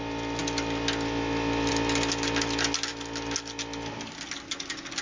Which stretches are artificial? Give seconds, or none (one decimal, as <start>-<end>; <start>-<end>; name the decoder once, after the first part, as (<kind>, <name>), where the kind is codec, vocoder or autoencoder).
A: none